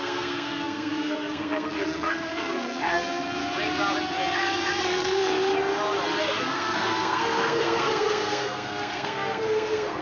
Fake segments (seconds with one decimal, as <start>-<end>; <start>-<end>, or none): 0.0-3.4; 4.3-5.5; 6.2-10.0